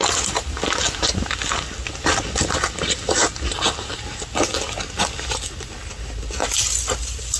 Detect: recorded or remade recorded